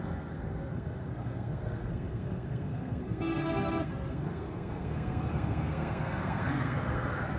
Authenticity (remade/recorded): remade